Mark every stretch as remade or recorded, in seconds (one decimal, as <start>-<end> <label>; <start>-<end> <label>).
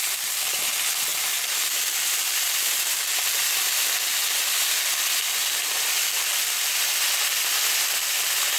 0.0-8.6 recorded